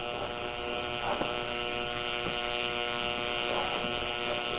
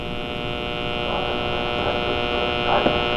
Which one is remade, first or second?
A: first